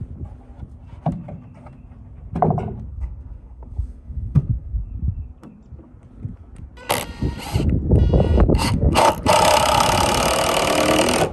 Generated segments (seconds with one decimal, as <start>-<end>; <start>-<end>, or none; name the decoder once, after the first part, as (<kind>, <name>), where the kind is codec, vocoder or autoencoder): 2.9-4.9 (codec, SNAC); 8.5-9.1